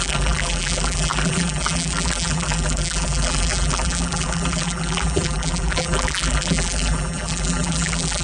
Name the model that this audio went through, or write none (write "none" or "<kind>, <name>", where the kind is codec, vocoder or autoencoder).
vocoder, BigVGAN v2